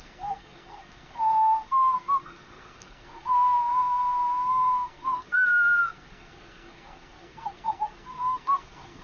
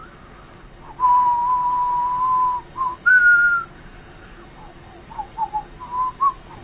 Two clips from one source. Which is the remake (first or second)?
first